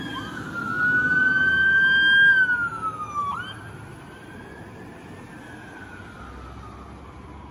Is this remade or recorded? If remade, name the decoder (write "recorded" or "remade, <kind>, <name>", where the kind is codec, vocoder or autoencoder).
recorded